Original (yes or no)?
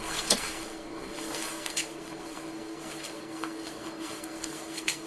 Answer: no